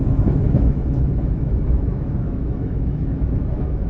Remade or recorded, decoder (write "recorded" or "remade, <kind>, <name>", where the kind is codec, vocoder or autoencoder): remade, autoencoder, DAC-VAE